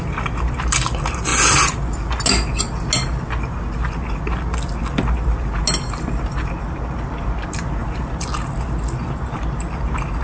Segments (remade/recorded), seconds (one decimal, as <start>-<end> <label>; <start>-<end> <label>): 0.0-10.2 recorded